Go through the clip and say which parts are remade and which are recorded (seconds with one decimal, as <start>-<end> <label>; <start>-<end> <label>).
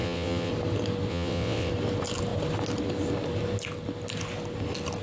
0.0-0.5 remade; 0.5-1.1 recorded; 1.1-1.7 remade; 1.7-5.0 recorded